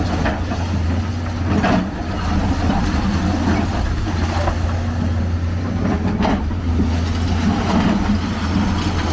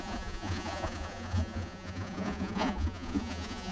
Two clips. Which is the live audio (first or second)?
first